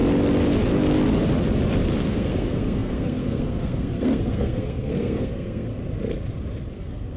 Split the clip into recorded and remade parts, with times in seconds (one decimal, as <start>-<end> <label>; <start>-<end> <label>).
0.0-2.1 recorded; 2.1-5.7 remade; 5.7-6.7 recorded; 6.7-7.2 remade